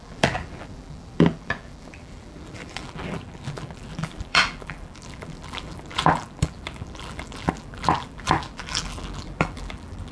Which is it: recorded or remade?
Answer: remade